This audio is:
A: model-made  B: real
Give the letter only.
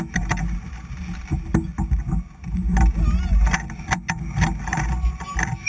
B